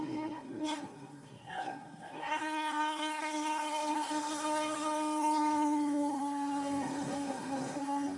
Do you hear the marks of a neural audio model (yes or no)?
yes